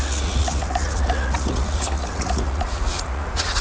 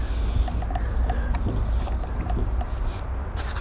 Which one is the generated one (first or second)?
first